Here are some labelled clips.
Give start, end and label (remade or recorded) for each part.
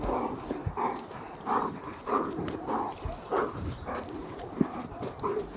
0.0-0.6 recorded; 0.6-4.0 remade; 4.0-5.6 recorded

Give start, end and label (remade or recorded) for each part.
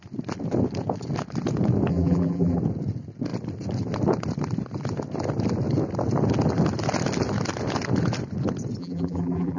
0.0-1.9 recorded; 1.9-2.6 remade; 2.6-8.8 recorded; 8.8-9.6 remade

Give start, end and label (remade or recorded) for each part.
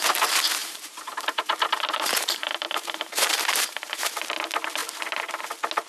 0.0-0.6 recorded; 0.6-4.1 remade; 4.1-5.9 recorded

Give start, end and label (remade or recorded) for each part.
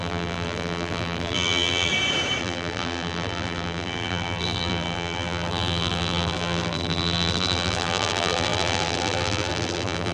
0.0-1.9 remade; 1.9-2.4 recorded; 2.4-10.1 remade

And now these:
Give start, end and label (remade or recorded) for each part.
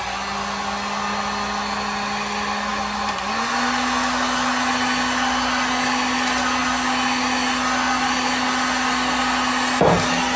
0.0-10.4 recorded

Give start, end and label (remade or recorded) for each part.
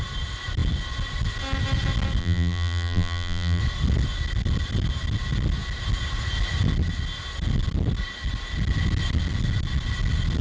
0.0-2.2 recorded; 2.2-3.6 remade; 3.6-10.4 recorded